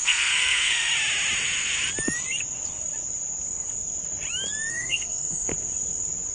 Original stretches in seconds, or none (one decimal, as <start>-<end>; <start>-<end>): 0.9-4.7; 5.5-6.3